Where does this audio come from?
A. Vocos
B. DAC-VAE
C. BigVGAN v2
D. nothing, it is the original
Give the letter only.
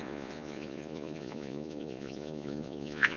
A